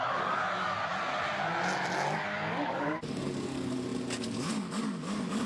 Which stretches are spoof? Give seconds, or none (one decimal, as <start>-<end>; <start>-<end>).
0.0-0.8; 2.1-5.5